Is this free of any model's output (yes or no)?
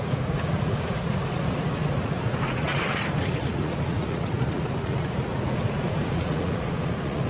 no